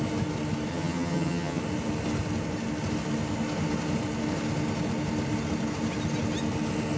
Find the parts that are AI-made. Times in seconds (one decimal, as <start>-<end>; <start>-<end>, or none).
0.7-1.6